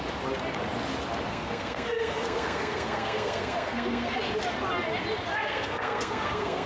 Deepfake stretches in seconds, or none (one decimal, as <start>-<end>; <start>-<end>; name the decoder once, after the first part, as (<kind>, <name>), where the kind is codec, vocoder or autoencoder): 1.3-4.2 (codec, SNAC); 5.3-6.7